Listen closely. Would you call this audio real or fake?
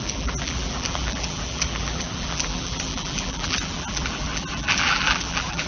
fake